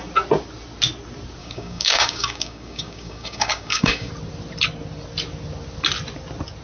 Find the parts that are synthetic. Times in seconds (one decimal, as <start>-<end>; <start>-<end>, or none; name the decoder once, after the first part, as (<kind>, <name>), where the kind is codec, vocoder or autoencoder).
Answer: 1.4-4.1 (codec, DAC)